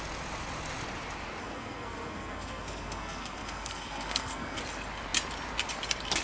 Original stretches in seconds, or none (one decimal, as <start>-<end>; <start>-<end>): 0.0-1.4; 4.6-6.2